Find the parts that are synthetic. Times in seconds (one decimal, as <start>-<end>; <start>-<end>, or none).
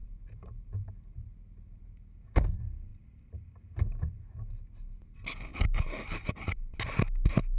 0.0-0.9; 2.9-4.1; 5.5-6.8